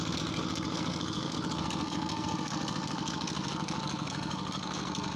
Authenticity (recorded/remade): remade